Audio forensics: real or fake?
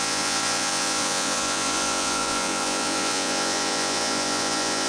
fake